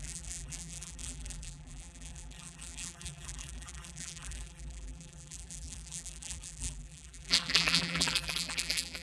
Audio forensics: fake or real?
fake